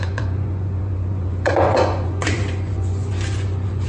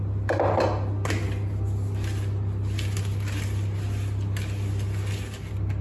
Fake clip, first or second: first